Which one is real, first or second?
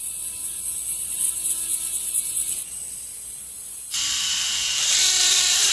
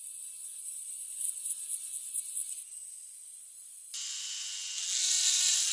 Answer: second